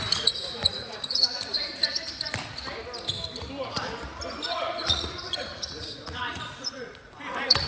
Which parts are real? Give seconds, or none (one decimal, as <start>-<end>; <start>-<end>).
1.8-4.5